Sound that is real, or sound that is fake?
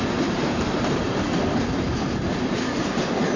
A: fake